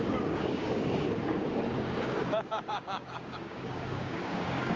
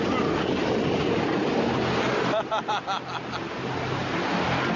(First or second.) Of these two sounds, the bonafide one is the second